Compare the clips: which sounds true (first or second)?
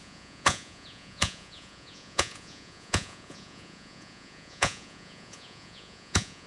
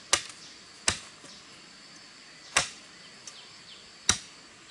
second